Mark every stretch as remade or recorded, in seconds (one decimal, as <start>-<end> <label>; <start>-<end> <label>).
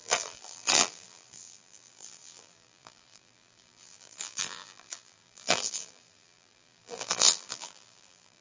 0.0-8.4 remade